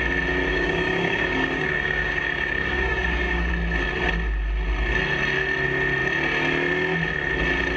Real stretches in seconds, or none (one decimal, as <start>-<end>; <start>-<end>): 0.0-0.5; 3.5-7.8